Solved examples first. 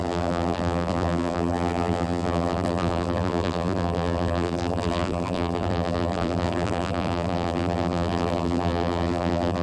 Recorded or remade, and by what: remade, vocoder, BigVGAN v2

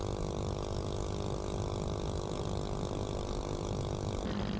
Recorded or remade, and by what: recorded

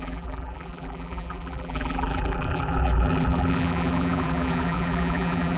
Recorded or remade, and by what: remade, vocoder, BigVGAN v2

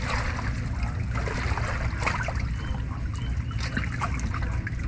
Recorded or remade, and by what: recorded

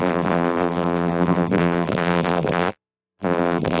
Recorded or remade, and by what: remade, vocoder, BigVGAN v2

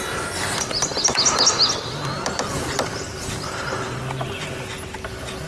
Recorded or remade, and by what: recorded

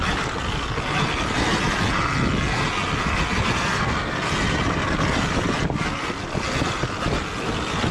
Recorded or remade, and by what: recorded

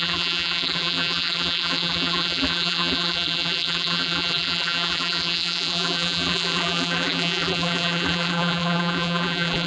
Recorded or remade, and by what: remade, vocoder, BigVGAN v2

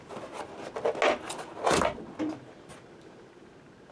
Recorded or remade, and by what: recorded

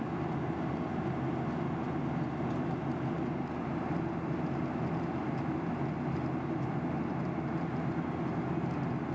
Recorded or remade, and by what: recorded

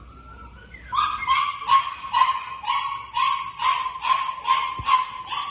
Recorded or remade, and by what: recorded